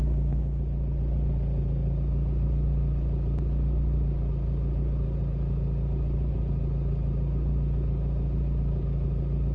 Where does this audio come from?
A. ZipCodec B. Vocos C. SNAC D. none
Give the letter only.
D